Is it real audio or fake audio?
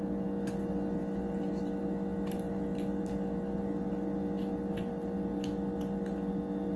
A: real